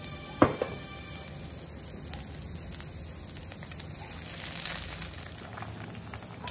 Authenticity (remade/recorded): recorded